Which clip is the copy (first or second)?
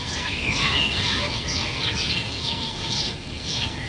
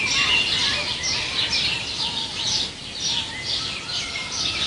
first